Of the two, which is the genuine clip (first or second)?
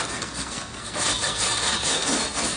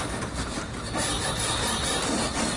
second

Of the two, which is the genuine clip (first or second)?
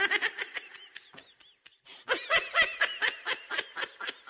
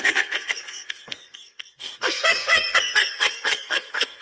first